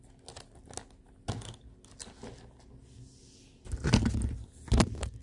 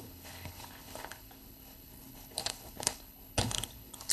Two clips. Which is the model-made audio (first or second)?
second